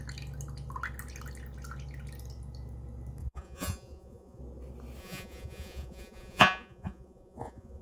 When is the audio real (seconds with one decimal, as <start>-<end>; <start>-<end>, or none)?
0.0-3.2; 4.4-5.0